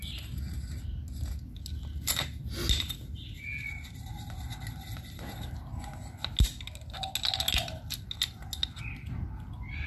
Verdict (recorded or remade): recorded